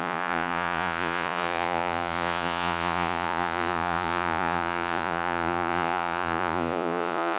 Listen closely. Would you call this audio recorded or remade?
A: remade